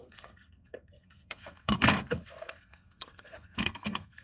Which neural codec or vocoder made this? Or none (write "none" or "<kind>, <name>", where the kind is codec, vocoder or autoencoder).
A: codec, SNAC